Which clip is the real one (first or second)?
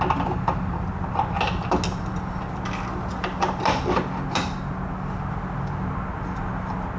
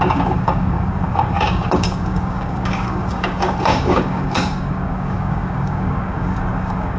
first